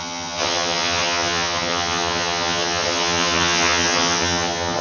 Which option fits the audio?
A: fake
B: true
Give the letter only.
A